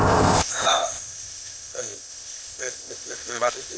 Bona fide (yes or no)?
no